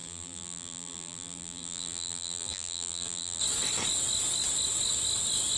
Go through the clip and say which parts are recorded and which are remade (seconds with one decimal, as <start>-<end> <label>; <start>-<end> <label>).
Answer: 0.0-3.4 remade; 3.4-5.6 recorded